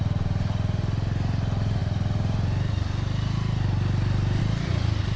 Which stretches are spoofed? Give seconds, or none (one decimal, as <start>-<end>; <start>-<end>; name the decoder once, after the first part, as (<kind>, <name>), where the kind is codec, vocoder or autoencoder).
none